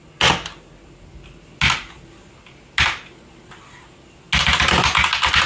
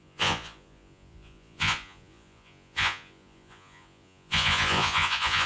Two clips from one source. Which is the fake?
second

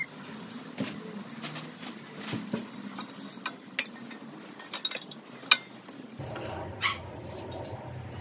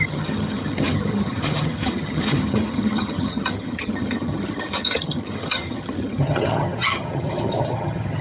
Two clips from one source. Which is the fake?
second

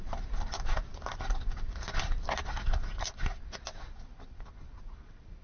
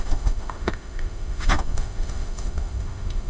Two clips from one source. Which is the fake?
second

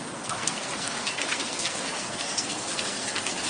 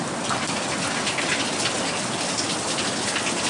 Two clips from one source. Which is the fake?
first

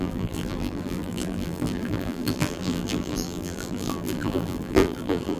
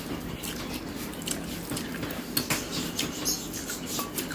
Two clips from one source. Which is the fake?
first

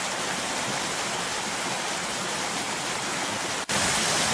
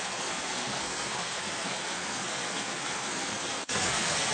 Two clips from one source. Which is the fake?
second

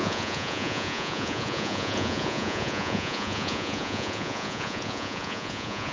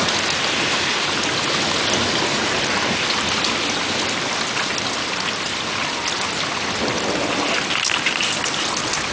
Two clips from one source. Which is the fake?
first